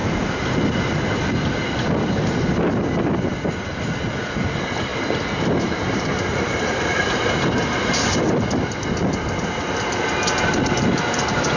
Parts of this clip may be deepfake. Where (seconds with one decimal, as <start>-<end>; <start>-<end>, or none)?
0.0-0.9; 4.9-8.1